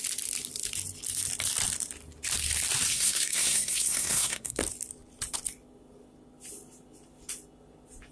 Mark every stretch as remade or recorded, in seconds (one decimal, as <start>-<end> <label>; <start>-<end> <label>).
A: 0.0-2.9 recorded; 2.9-4.6 remade; 4.6-8.1 recorded